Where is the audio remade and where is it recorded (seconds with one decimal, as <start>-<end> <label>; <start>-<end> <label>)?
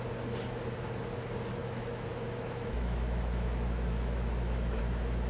0.0-1.6 recorded; 1.6-4.8 remade; 4.8-5.3 recorded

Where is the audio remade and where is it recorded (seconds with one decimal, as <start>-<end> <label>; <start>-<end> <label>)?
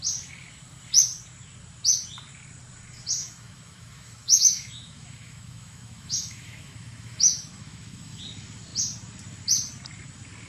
0.0-3.2 recorded; 3.2-8.2 remade; 8.2-10.5 recorded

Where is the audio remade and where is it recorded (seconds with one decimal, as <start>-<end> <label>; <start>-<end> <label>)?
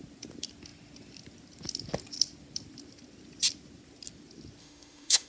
0.0-4.6 recorded; 4.6-5.3 remade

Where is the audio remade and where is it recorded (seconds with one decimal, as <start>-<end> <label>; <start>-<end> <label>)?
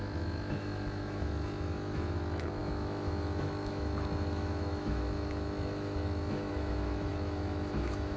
0.0-8.2 remade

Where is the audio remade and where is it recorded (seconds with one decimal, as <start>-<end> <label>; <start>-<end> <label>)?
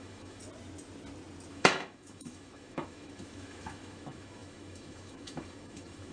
0.0-0.4 remade; 0.4-1.5 recorded; 1.5-6.1 remade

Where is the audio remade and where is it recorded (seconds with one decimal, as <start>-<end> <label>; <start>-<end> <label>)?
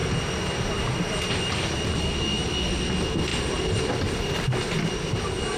0.0-5.6 recorded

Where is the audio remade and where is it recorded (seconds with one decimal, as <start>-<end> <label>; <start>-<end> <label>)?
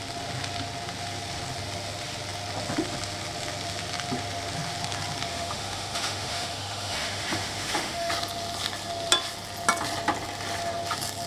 0.0-5.3 recorded; 5.3-8.1 remade; 8.1-11.3 recorded